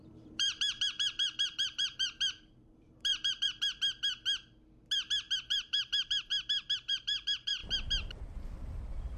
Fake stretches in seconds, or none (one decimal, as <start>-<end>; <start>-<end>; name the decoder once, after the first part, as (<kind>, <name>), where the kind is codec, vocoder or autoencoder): 0.0-3.7 (vocoder, BigVGAN v2); 5.5-6.3; 6.9-7.6